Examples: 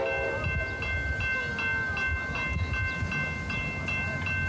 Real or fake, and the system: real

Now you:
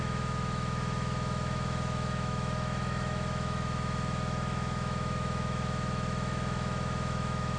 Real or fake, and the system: fake, autoencoder, DAC-VAE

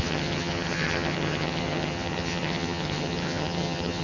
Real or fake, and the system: fake, vocoder, HiFi-GAN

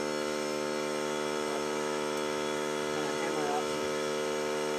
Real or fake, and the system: fake, autoencoder, DAC-VAE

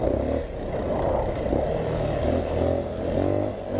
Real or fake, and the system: real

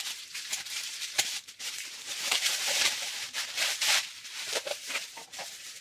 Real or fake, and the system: fake, vocoder, BigVGAN v2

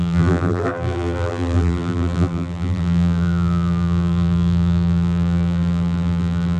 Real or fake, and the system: fake, vocoder, BigVGAN v2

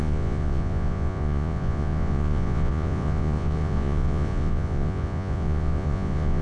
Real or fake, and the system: fake, vocoder, Vocos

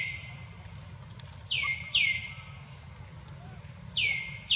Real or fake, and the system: real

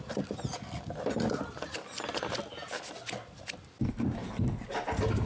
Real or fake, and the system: real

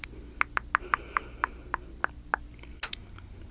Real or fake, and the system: real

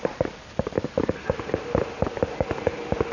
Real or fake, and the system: real